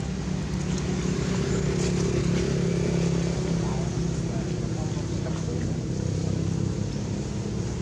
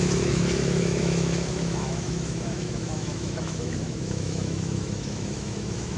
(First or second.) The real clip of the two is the first